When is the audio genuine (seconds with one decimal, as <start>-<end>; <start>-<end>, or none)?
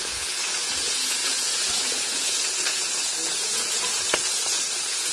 none